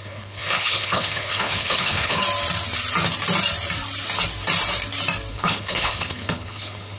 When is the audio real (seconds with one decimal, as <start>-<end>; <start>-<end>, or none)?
2.2-5.3